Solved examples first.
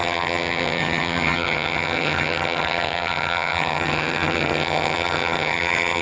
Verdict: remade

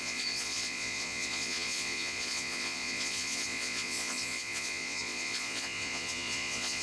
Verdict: remade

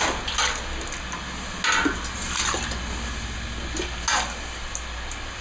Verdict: recorded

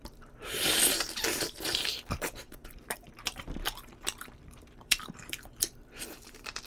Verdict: remade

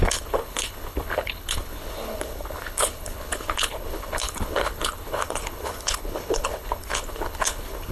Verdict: remade